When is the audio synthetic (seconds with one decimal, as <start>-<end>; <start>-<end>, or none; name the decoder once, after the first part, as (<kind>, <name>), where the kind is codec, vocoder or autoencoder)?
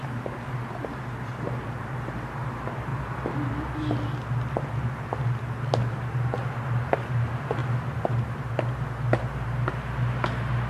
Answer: none